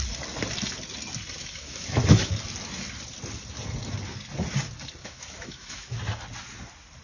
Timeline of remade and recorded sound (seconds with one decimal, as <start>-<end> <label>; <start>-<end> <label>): 0.0-1.4 recorded; 1.4-2.3 remade; 2.3-5.0 recorded; 5.0-6.0 remade; 6.0-7.0 recorded